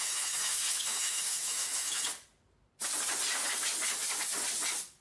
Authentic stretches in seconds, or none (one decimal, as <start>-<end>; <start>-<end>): 2.0-5.0